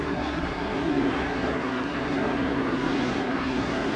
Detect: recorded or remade remade